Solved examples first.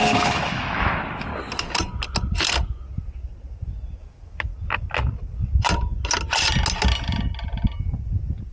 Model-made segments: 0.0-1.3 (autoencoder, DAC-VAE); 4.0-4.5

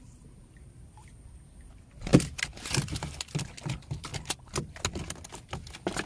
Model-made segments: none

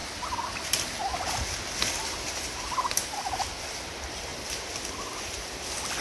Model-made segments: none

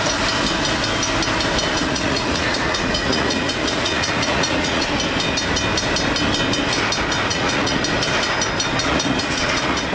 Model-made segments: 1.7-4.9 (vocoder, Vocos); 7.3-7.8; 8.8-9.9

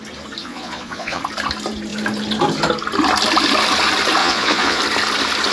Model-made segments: 0.4-1.2 (vocoder, Vocos); 4.2-4.8

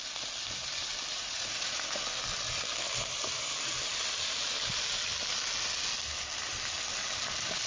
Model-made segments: 1.1-1.8 (vocoder, Vocos)

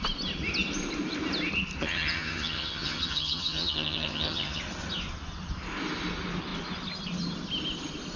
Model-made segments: 1.8-4.6 (vocoder, HiFi-GAN)

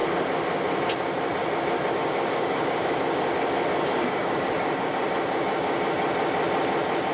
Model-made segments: 2.0-2.9 (codec, DAC); 4.0-4.9